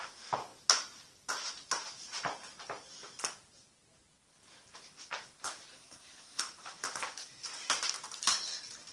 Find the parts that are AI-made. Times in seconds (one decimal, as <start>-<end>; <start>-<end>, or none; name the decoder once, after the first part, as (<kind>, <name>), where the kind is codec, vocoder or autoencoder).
5.7-6.4 (codec, SNAC)